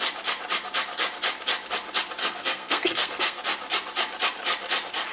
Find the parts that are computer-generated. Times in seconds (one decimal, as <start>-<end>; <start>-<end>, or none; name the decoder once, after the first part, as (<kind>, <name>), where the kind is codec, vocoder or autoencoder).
2.2-3.4 (codec, SNAC)